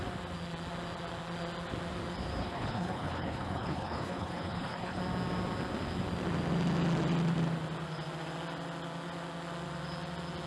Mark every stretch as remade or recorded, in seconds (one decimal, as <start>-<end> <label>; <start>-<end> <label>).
0.0-2.4 recorded; 2.4-5.0 remade; 5.0-10.5 recorded